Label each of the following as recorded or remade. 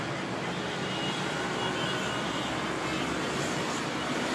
recorded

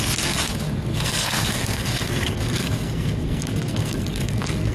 remade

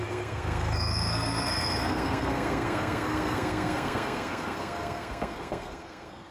remade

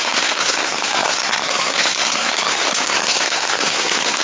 remade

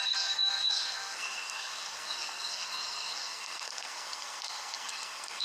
remade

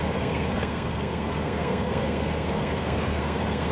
remade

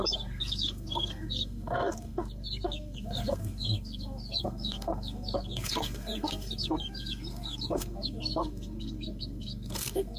remade